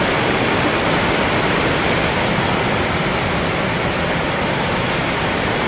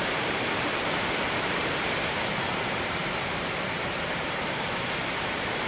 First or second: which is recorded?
first